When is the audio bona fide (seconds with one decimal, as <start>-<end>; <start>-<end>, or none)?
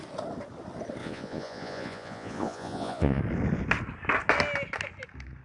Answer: 0.0-1.0; 3.2-5.4